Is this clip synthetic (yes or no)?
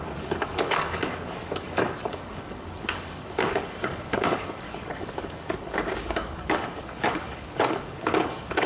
yes